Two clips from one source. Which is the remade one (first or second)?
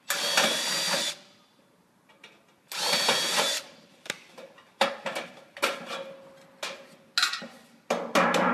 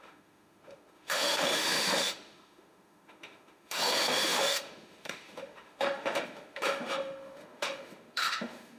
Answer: second